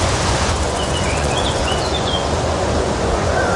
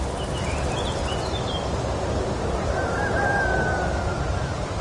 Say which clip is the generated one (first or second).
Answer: first